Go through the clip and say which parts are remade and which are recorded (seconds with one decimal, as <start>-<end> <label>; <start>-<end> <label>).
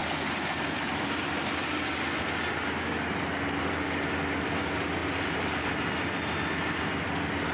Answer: 0.0-5.0 recorded; 5.0-6.4 remade; 6.4-7.5 recorded